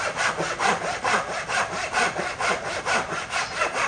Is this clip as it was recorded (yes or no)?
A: no